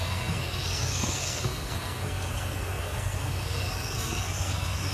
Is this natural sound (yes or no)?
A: no